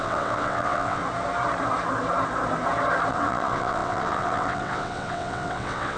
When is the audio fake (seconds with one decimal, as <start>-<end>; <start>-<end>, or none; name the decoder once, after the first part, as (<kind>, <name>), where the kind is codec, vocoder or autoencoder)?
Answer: 0.0-1.0 (vocoder, WaveNeXt); 3.1-6.0